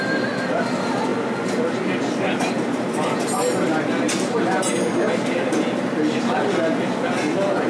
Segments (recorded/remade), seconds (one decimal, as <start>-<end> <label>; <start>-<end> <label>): 0.0-7.7 recorded